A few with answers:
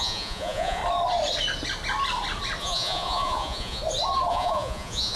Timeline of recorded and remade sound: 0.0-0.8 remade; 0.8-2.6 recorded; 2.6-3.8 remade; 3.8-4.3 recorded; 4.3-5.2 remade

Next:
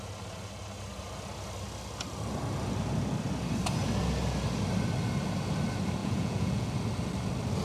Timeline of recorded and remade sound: 0.0-6.0 recorded; 6.0-6.7 remade; 6.7-7.6 recorded

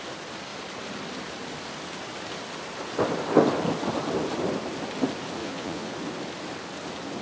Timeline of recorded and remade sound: 0.0-5.4 recorded; 5.4-5.9 remade; 5.9-7.2 recorded

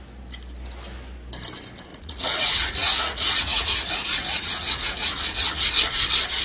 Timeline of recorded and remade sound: 0.0-1.9 recorded; 1.9-5.7 remade; 5.7-6.4 recorded

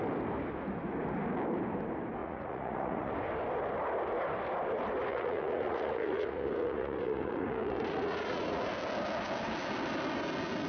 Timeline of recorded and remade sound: 0.0-2.2 recorded; 2.2-3.1 remade; 3.1-5.1 recorded; 5.1-8.6 remade; 8.6-10.7 recorded

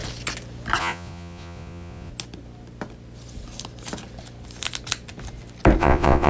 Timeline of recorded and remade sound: 0.0-0.8 recorded; 0.8-2.1 remade; 2.1-5.8 recorded; 5.8-6.3 remade

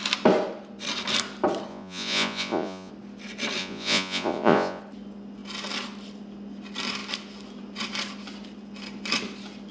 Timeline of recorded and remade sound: 0.0-1.7 recorded; 1.7-2.9 remade; 2.9-3.6 recorded; 3.6-4.8 remade; 4.8-9.7 recorded